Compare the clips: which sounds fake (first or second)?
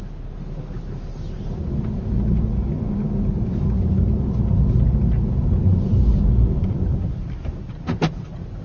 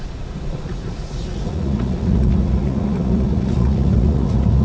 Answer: second